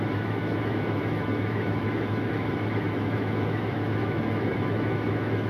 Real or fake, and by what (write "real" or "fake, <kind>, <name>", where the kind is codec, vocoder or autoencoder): fake, autoencoder, DAC-VAE